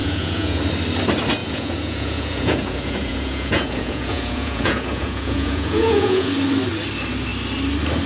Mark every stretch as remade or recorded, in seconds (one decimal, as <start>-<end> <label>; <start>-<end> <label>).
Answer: 0.0-0.6 remade; 0.6-1.4 recorded; 1.4-6.3 remade; 6.3-8.1 recorded